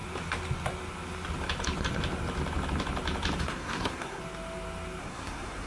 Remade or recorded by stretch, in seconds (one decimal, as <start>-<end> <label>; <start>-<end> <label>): 0.0-3.4 recorded; 3.4-4.2 remade; 4.2-5.0 recorded; 5.0-5.7 remade